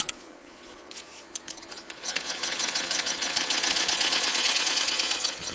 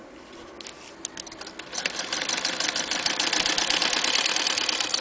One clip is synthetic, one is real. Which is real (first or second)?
second